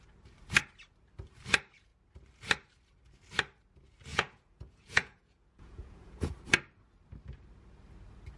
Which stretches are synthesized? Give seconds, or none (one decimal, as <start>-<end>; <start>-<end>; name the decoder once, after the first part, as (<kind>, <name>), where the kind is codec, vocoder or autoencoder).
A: 4.1-6.3 (vocoder, Vocos)